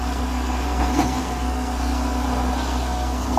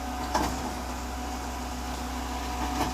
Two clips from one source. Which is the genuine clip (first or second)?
second